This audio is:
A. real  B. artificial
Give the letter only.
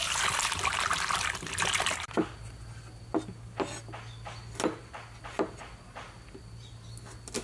A